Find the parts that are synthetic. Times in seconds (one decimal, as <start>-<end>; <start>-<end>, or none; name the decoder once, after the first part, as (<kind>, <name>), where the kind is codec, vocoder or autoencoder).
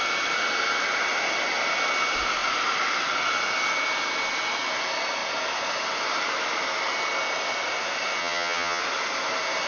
8.2-8.8 (vocoder, HiFi-GAN)